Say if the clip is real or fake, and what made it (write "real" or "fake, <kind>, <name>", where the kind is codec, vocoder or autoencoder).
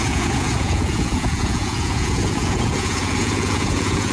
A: fake, vocoder, Vocos